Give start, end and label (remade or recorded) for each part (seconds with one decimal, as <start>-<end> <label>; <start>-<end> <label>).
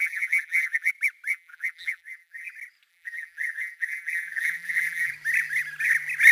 0.0-0.9 remade; 0.9-1.3 recorded; 1.3-2.5 remade; 2.5-2.9 recorded; 2.9-5.1 remade; 5.1-6.3 recorded